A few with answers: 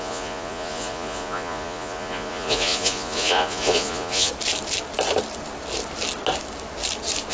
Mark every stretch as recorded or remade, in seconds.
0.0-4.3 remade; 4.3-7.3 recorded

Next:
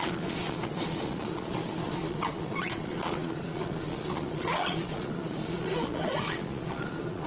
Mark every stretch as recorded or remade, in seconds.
0.0-7.3 remade